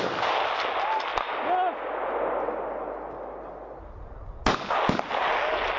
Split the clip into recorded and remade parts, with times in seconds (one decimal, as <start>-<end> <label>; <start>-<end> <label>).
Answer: 0.0-5.8 recorded